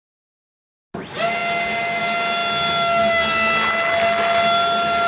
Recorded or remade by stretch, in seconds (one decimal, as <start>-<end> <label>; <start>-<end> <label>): 0.0-5.1 recorded